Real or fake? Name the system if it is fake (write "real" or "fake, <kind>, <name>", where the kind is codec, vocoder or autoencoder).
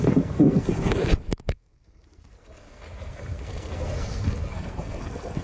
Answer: fake, codec, SNAC